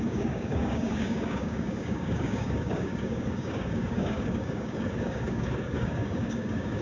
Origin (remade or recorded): remade